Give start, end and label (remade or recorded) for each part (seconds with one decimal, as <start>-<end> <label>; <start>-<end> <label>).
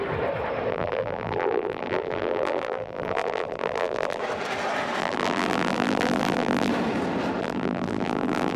0.0-0.7 recorded; 0.7-4.2 remade; 4.2-5.0 recorded; 5.0-6.7 remade; 6.7-7.4 recorded; 7.4-8.6 remade